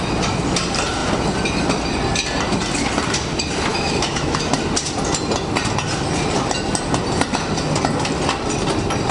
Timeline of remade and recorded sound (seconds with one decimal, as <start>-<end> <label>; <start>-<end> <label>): 0.0-3.7 recorded; 3.7-4.5 remade; 4.5-9.1 recorded